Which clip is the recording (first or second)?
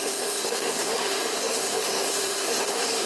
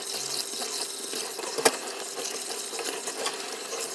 second